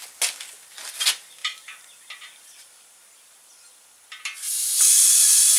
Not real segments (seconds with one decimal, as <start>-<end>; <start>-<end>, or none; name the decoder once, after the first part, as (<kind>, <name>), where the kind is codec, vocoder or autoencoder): 1.4-3.6 (vocoder, BigVGAN v2)